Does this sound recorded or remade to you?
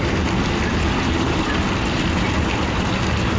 remade